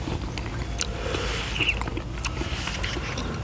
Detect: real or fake real